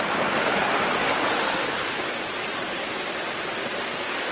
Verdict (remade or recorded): recorded